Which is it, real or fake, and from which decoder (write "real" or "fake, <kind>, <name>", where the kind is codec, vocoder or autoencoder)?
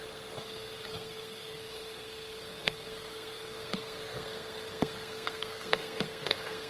fake, codec, SNAC